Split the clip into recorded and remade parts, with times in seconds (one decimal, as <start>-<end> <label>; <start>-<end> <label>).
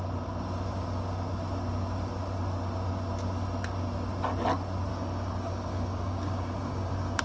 0.0-4.9 recorded; 4.9-7.2 remade